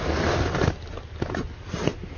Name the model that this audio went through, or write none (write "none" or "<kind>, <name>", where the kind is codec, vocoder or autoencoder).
none